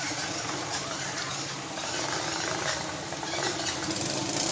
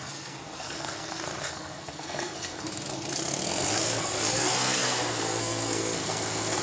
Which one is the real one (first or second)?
first